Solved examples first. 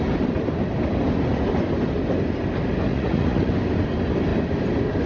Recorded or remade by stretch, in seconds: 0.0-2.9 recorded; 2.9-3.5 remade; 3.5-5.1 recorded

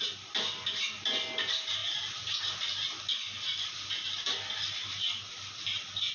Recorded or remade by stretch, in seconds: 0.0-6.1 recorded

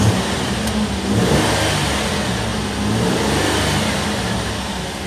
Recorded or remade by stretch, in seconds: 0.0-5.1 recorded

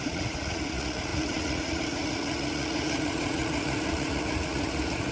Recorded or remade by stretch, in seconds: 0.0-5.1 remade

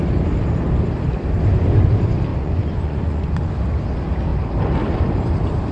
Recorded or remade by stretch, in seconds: 0.0-2.3 recorded; 2.3-3.5 remade; 3.5-5.7 recorded